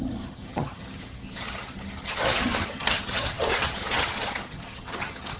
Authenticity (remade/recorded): remade